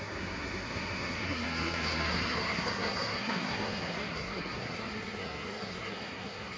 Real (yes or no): no